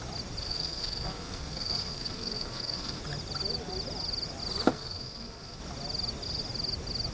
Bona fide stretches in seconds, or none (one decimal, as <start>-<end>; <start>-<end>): 0.0-0.4; 3.0-4.7; 5.6-7.1

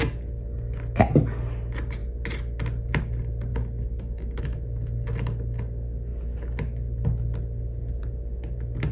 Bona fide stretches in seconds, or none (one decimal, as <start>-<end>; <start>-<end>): 0.0-3.5; 4.4-8.9

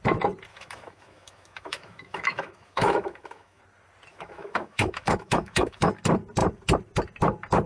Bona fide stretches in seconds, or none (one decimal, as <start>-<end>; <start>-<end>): 0.0-0.5; 3.6-4.1; 5.9-7.7

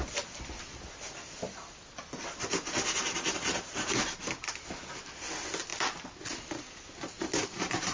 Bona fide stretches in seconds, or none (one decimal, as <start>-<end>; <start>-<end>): 0.0-7.9

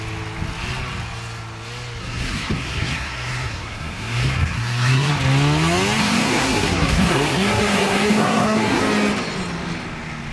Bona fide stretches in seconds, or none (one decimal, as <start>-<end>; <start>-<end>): 0.0-2.0; 5.1-6.0; 8.8-10.3

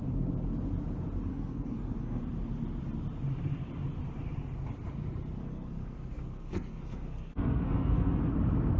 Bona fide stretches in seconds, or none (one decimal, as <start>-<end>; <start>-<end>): 0.0-1.3; 2.2-5.4; 8.2-8.8